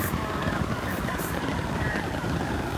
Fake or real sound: fake